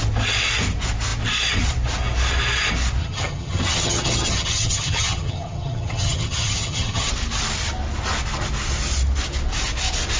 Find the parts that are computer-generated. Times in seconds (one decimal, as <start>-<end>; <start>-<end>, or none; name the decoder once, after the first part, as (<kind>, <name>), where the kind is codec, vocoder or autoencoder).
3.0-7.1 (vocoder, HiFi-GAN)